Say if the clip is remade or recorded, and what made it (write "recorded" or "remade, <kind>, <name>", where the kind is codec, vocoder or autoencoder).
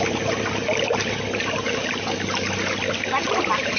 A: recorded